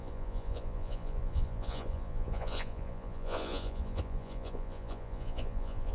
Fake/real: fake